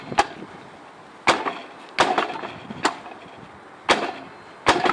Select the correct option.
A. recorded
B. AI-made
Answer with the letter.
A